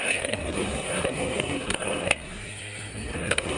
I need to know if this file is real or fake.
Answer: fake